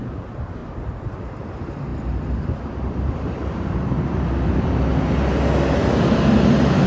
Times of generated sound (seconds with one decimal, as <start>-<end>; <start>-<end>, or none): none